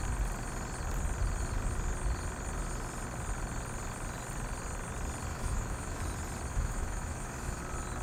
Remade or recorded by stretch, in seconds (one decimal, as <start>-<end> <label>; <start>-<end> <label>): 0.0-5.3 recorded; 5.3-6.0 remade; 6.0-6.5 recorded; 6.5-7.6 remade; 7.6-8.0 recorded

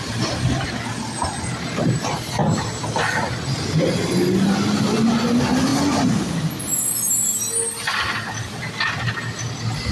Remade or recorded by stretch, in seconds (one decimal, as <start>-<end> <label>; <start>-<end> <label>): 0.0-9.9 recorded

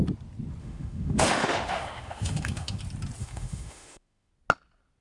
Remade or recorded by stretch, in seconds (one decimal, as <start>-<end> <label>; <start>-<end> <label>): 0.0-0.6 recorded; 0.6-2.8 remade; 2.8-3.2 recorded; 3.2-4.3 remade; 4.3-5.0 recorded

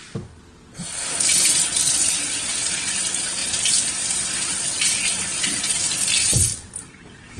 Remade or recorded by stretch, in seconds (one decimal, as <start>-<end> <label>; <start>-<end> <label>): 0.0-7.4 recorded